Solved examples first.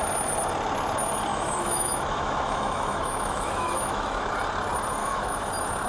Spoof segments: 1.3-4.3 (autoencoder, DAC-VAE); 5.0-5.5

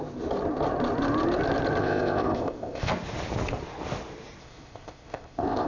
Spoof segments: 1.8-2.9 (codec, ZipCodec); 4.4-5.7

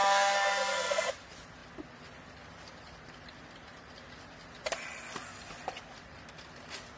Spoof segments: 0.0-1.1 (codec, SNAC)

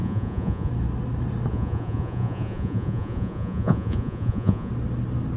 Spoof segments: 0.0-0.7 (vocoder, Vocos); 1.5-4.7

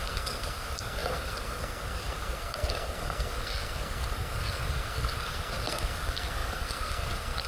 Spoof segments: 0.0-7.5 (codec, SNAC)

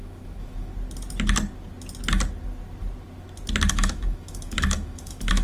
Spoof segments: 0.0-0.7 (autoencoder, DAC-VAE); 3.7-5.4

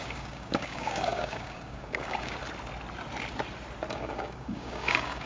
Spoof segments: 0.0-2.4 (codec, DAC); 3.9-5.3

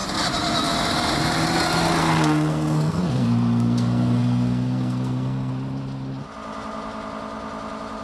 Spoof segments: 2.0-5.5 (codec, SNAC)